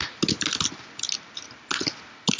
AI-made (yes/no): no